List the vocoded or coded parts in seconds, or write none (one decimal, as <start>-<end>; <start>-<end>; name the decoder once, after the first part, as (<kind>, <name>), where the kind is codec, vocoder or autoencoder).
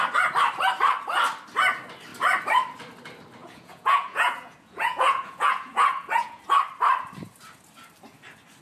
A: 3.4-6.4 (vocoder, Vocos)